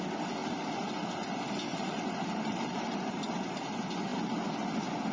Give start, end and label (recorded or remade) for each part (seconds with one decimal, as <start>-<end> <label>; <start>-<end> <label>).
0.0-0.4 recorded; 0.4-0.9 remade; 0.9-1.7 recorded; 1.7-3.3 remade; 3.3-5.1 recorded